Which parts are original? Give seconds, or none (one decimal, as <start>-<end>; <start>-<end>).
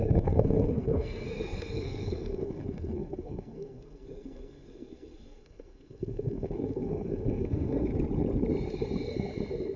7.9-9.8